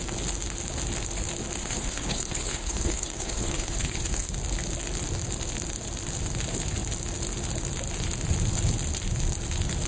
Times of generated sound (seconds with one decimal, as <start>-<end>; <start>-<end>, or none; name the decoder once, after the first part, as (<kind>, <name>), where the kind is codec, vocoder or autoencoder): 1.6-4.3 (codec, HILCodec)